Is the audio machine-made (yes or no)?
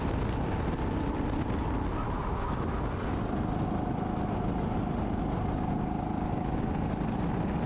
no